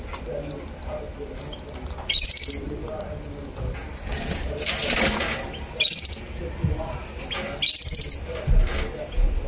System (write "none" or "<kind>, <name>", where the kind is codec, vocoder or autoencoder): none